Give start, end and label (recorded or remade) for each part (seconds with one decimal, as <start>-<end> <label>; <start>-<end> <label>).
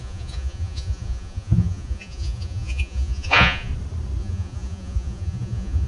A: 0.0-3.7 remade; 3.7-4.2 recorded; 4.2-5.9 remade